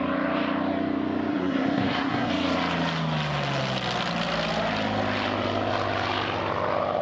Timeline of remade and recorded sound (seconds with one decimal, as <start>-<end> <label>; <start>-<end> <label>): 0.0-1.3 recorded; 1.3-2.3 remade; 2.3-7.0 recorded